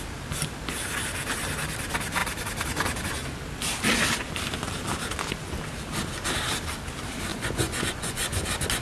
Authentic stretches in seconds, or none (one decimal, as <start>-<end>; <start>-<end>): 0.0-7.3; 8.4-8.8